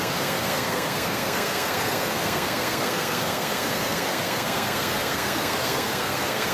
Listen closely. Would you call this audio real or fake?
fake